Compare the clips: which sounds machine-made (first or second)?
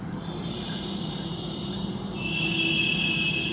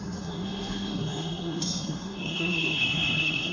second